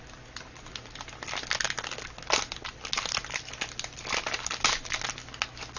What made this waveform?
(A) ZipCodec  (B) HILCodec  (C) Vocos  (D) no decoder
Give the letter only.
D